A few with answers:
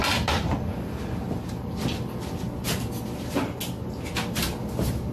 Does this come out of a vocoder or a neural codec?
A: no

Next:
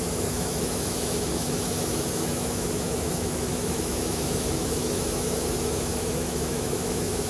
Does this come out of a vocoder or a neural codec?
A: yes